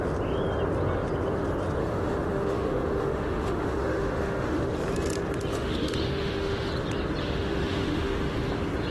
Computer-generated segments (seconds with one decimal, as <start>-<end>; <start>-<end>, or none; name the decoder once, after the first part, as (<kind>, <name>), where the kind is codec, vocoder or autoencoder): 1.8-4.7 (autoencoder, DAC-VAE); 5.5-6.7; 7.2-8.5